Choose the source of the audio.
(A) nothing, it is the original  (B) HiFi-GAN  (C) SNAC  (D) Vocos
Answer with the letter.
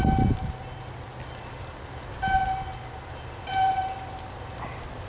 A